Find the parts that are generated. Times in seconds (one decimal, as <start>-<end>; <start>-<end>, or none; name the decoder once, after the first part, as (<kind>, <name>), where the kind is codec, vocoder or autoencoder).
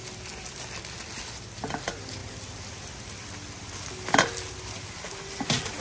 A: none